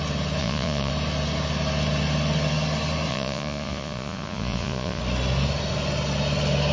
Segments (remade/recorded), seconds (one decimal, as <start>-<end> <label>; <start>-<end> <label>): 0.0-0.4 recorded; 0.4-0.9 remade; 0.9-3.1 recorded; 3.1-5.0 remade; 5.0-6.7 recorded